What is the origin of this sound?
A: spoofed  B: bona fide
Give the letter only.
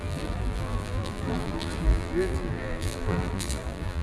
A